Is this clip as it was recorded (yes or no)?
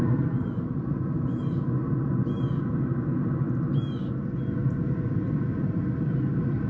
yes